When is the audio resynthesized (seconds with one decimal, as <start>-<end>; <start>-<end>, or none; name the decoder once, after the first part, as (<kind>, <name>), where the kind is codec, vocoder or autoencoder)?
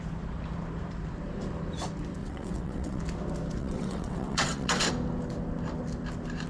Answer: 2.2-3.0 (vocoder, WaveNeXt); 3.6-4.9